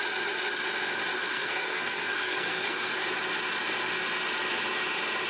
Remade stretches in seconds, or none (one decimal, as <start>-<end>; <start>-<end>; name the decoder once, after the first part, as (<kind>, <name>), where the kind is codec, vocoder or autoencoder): 1.3-2.9 (codec, SNAC)